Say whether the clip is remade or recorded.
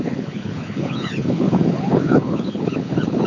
remade